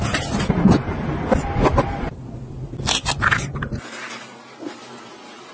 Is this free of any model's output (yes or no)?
yes